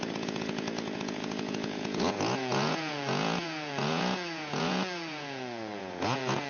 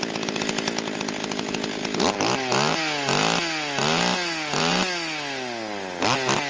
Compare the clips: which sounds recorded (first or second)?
second